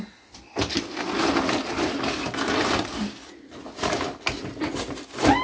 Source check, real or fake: real